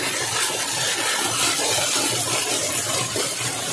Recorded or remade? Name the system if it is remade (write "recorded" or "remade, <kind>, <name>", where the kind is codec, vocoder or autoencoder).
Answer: recorded